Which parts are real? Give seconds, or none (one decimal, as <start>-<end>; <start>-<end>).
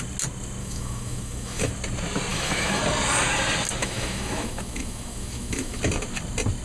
0.0-0.6; 1.7-2.3; 2.8-3.8; 5.8-6.6